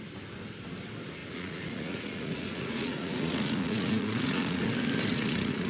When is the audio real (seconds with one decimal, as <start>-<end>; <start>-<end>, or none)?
0.0-1.2; 4.6-5.1